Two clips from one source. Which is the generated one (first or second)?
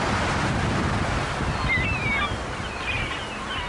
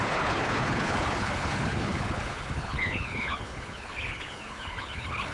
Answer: second